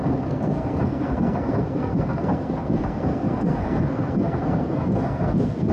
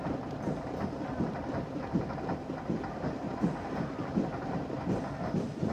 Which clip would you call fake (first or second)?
first